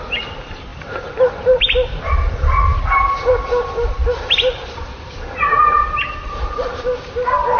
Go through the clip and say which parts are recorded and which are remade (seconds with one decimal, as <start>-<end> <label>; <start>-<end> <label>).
0.0-7.6 recorded